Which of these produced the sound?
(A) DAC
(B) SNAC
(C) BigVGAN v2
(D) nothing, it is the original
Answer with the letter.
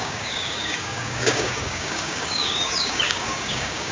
A